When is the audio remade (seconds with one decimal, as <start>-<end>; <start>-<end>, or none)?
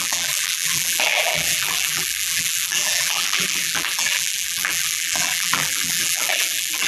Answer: 0.0-6.9